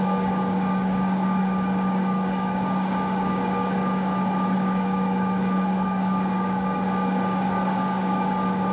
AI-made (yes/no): yes